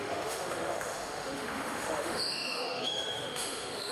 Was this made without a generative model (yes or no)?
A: no